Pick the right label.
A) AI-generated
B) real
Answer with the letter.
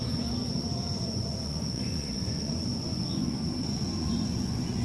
A